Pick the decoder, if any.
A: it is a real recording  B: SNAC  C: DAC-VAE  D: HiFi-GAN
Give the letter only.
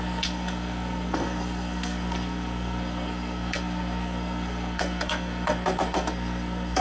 B